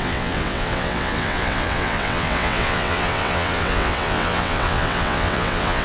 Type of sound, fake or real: fake